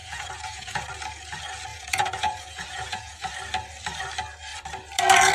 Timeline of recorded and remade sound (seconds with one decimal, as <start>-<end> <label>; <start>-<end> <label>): 0.0-0.8 remade; 0.8-1.7 recorded; 1.7-3.3 remade; 3.3-5.3 recorded